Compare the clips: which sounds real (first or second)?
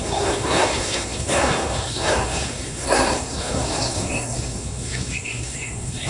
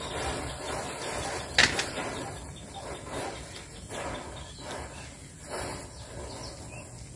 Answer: second